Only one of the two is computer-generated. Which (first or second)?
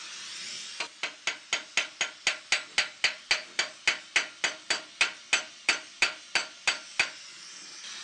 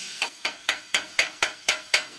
second